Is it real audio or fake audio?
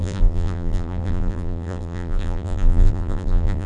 fake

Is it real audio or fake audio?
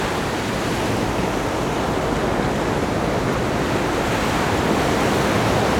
real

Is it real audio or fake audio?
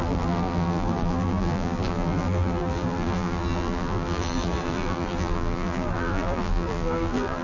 fake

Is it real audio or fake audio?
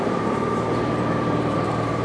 fake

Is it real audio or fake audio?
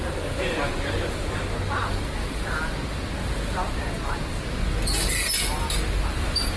real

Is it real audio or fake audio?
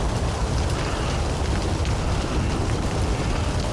fake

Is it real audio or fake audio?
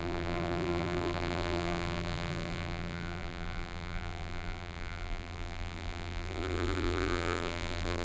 fake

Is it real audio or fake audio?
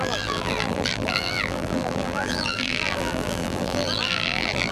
fake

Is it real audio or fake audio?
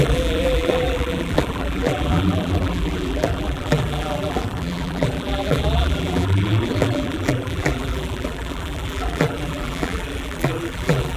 fake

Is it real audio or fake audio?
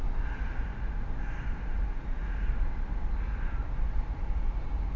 real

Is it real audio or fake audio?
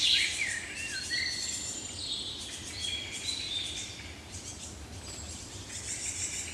fake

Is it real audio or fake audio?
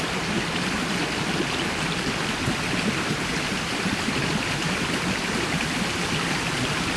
real